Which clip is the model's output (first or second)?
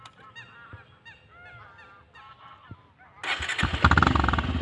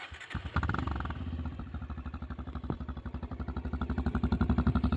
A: second